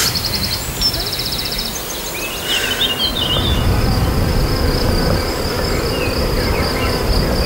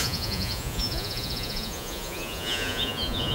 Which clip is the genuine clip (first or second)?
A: first